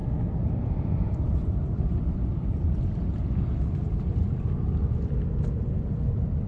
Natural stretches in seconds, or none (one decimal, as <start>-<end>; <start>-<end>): 2.8-6.5